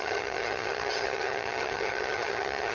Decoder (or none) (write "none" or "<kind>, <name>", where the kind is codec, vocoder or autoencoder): vocoder, HiFi-GAN